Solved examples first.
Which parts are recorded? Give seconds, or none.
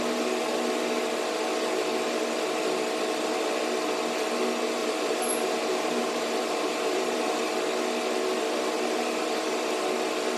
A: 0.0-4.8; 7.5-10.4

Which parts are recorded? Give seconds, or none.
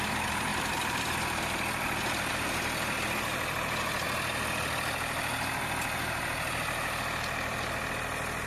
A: 0.0-0.5; 1.4-8.5